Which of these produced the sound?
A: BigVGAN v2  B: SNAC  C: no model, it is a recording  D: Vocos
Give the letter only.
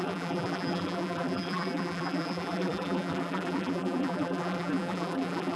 A